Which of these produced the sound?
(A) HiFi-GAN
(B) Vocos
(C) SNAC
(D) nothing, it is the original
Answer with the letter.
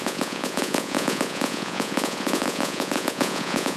B